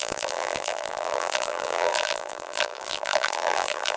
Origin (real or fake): fake